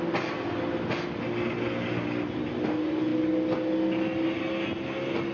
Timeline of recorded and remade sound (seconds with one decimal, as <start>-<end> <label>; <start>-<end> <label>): 0.0-5.3 recorded